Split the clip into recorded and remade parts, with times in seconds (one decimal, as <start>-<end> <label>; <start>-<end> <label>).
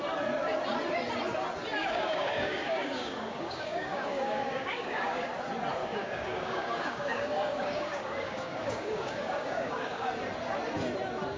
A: 0.0-1.8 recorded; 1.8-5.3 remade; 5.3-5.8 recorded; 5.8-10.1 remade; 10.1-11.4 recorded